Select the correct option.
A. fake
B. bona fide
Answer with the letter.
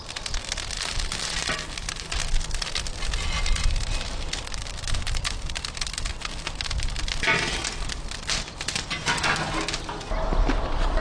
B